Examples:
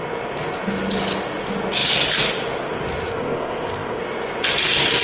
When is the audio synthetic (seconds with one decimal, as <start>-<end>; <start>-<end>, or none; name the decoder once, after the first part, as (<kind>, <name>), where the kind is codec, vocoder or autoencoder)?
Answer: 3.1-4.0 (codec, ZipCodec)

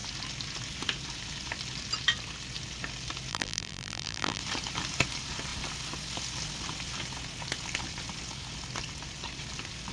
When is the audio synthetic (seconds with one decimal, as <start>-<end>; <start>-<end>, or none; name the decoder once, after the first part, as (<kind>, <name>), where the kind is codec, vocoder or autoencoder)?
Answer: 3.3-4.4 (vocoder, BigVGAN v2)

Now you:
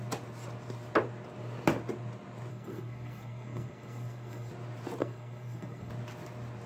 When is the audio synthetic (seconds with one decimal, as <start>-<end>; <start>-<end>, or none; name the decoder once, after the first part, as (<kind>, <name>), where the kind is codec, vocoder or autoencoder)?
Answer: 2.5-4.5 (codec, SNAC); 5.0-5.9

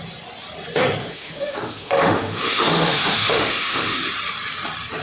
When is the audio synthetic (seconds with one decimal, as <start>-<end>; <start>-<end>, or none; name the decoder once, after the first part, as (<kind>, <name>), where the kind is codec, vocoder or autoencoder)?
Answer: 1.0-4.0 (autoencoder, DAC-VAE)

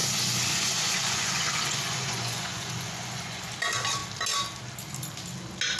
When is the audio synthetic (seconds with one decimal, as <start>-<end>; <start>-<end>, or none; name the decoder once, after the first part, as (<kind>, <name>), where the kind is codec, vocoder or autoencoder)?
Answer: 0.0-3.5 (vocoder, Vocos)

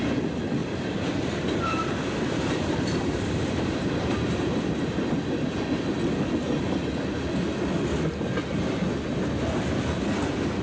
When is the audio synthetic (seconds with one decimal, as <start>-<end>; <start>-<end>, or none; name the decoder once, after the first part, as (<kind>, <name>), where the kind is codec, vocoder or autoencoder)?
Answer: 0.6-5.5 (vocoder, BigVGAN v2)